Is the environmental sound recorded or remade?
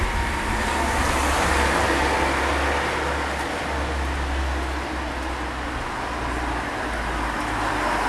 recorded